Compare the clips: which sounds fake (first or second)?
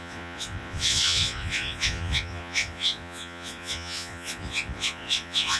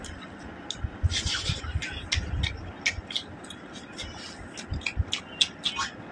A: first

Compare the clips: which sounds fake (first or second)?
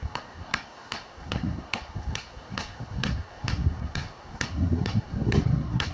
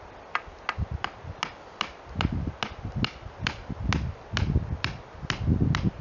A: first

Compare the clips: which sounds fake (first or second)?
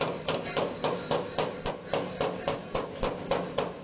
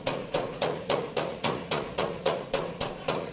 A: second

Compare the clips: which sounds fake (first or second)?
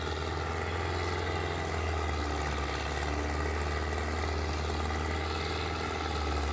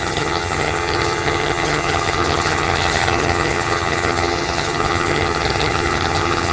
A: second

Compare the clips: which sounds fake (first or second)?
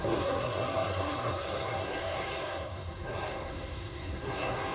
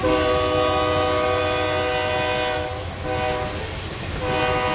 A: first